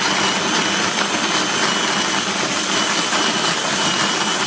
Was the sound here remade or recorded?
recorded